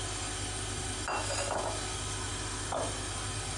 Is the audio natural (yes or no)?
yes